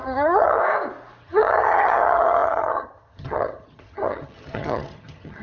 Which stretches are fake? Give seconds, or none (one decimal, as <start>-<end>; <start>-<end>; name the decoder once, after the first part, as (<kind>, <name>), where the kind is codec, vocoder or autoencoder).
0.0-0.6 (vocoder, HiFi-GAN); 1.2-5.4